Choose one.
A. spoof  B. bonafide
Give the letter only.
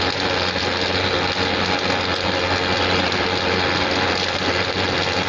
B